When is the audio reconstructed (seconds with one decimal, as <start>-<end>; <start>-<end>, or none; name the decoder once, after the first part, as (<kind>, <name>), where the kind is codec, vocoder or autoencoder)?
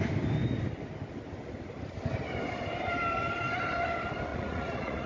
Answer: 4.3-5.1 (vocoder, Vocos)